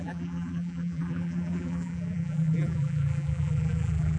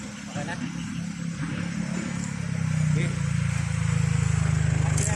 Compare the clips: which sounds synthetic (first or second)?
first